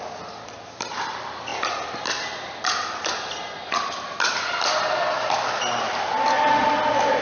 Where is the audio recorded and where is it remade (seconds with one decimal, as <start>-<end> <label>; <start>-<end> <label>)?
0.0-7.2 recorded